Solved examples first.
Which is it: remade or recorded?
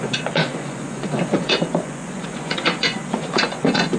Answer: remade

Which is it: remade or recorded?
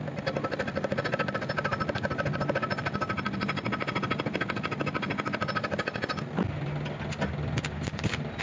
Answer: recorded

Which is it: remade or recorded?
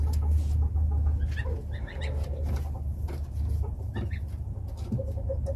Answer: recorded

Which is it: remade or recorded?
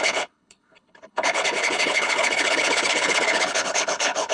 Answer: remade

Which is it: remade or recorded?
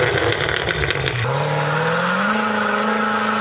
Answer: recorded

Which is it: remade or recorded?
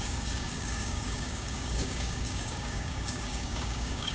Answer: remade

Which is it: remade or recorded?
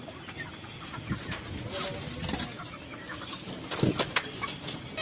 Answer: recorded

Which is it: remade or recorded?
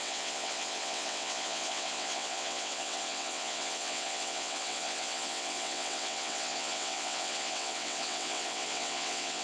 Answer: remade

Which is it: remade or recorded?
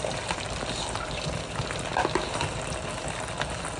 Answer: recorded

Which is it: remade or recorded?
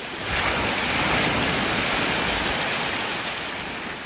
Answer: recorded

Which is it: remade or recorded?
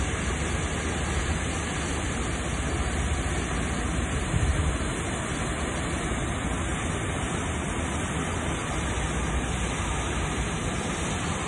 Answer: recorded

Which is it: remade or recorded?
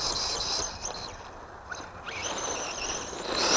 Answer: recorded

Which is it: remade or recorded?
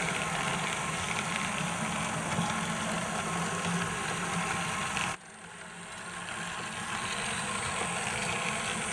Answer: recorded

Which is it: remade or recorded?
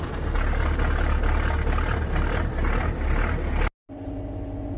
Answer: recorded